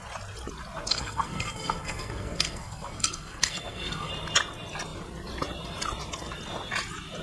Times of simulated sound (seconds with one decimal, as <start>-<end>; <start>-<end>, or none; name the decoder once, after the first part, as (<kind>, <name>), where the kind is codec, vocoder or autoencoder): 0.9-4.1 (codec, SNAC)